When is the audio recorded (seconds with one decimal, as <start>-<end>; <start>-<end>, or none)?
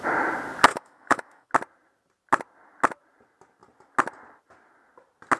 0.0-0.7; 1.5-5.4